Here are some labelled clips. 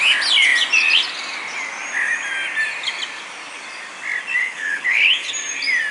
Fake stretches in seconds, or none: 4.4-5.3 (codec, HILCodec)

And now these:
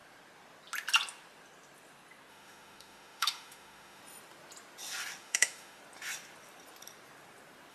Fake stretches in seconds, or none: 2.3-4.0 (autoencoder, DAC-VAE); 5.2-5.8

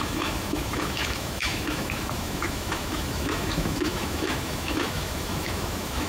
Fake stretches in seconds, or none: 0.0-6.1 (autoencoder, DAC-VAE)

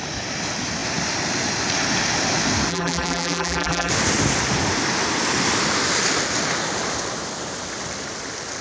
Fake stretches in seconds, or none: 2.7-3.9 (vocoder, BigVGAN v2)

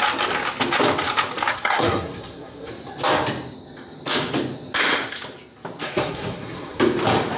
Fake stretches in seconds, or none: 1.5-2.7 (codec, SNAC); 5.8-6.8